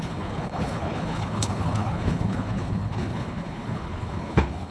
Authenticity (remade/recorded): remade